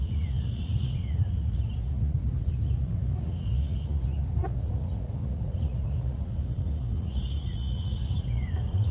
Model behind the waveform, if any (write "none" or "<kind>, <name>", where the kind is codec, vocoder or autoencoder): vocoder, Vocos